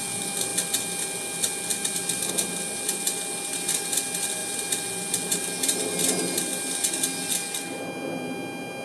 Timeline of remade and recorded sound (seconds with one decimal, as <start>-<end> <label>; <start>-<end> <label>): 0.0-8.8 recorded